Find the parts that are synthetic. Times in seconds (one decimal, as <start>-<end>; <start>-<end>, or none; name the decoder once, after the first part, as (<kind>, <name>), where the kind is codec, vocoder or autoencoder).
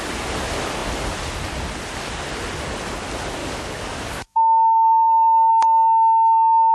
3.4-5.5 (codec, DAC)